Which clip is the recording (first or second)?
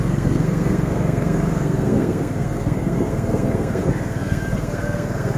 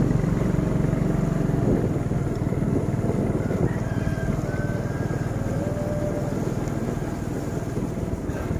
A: second